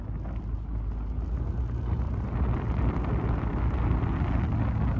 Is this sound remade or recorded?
recorded